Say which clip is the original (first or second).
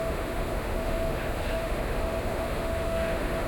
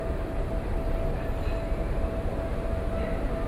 second